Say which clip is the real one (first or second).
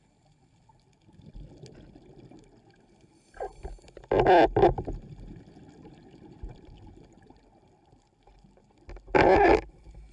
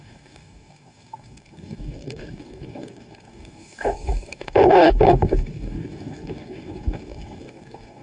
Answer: first